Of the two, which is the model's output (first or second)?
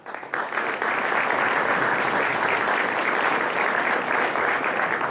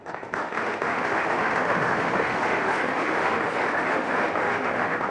second